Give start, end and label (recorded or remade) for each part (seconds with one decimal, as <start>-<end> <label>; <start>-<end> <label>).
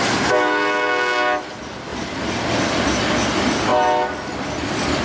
0.0-1.9 recorded; 1.9-2.8 remade; 2.8-5.0 recorded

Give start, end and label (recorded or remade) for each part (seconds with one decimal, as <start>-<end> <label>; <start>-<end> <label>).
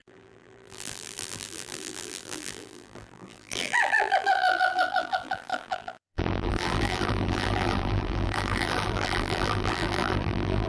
0.0-10.7 remade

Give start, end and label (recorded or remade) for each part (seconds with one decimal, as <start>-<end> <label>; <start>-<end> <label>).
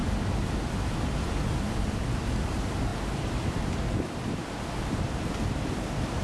0.0-1.6 recorded; 1.6-6.2 remade